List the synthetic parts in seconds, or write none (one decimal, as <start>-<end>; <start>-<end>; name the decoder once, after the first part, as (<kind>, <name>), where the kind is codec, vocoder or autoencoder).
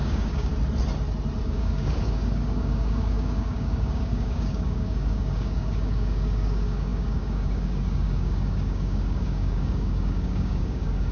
0.0-0.5 (codec, DAC); 1.4-11.1